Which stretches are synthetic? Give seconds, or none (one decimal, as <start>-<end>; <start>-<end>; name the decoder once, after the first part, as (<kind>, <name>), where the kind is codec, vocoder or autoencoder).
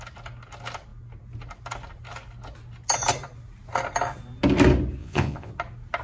5.0-5.5 (vocoder, Vocos)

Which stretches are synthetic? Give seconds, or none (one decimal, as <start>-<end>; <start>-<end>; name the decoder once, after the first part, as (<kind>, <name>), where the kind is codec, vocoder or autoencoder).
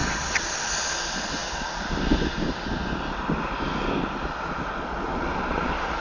0.0-0.7 (vocoder, Vocos); 5.1-6.0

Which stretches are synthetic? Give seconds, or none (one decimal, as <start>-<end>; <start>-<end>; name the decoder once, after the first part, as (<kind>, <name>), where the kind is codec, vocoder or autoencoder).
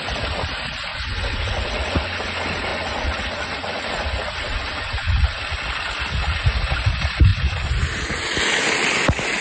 0.9-2.2 (vocoder, Vocos); 2.7-5.5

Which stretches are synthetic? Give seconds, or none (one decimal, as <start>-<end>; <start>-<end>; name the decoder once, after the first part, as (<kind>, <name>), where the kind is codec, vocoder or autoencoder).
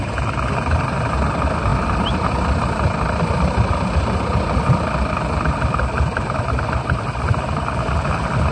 none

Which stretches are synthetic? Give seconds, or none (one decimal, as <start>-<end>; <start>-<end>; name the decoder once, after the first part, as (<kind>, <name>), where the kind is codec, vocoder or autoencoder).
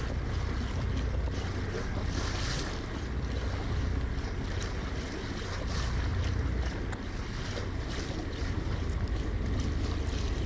none